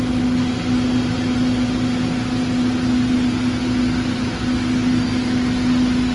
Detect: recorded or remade recorded